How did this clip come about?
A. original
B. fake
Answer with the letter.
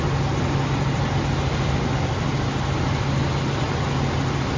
A